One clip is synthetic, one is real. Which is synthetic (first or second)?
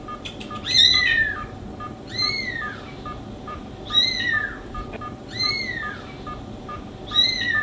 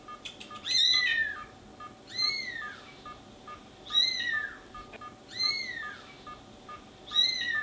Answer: first